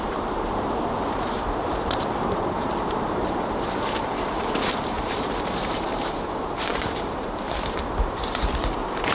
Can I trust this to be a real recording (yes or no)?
no